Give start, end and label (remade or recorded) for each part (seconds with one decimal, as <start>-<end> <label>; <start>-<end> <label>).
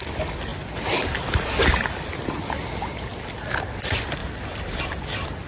0.0-5.5 recorded